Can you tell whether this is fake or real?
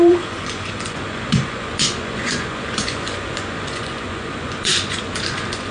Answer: fake